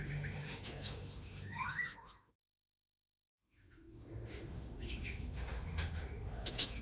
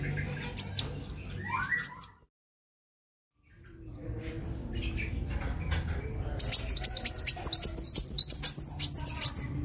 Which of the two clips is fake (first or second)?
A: first